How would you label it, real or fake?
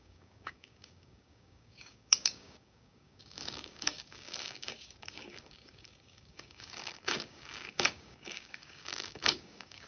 fake